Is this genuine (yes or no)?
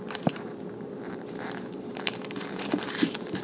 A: no